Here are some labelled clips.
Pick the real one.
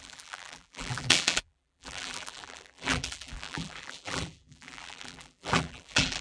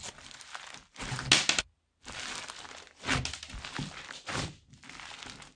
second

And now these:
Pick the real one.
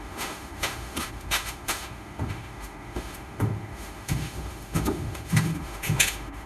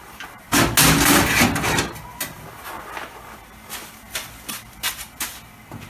second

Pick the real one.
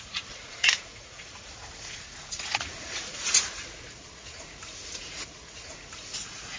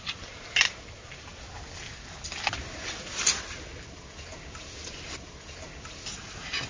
second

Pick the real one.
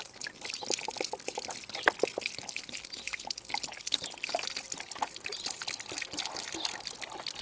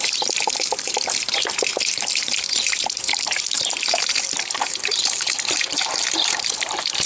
first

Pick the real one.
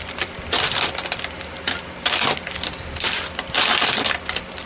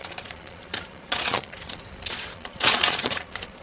first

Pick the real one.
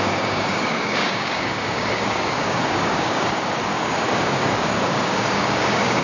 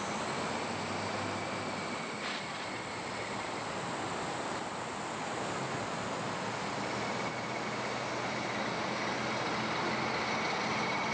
second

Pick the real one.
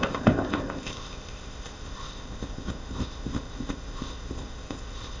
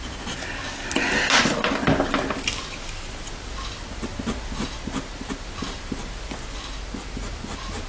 second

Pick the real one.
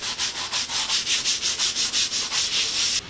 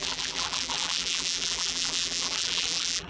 first